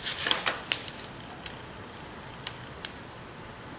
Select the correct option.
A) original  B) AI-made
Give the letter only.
A